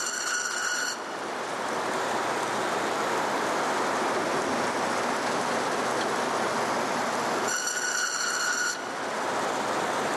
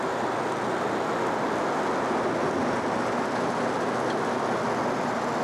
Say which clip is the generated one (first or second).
first